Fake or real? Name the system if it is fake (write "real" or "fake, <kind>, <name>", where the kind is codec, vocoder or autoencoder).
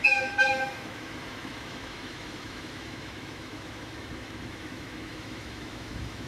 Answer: fake, autoencoder, DAC-VAE